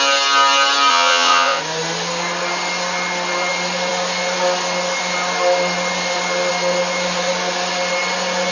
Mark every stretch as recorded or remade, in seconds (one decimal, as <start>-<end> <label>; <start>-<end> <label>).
0.0-0.9 recorded; 0.9-1.6 remade; 1.6-8.5 recorded